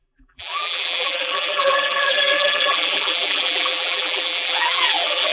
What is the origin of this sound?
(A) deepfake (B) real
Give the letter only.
A